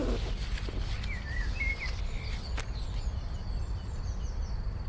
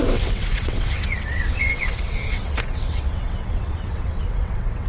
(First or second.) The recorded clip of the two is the first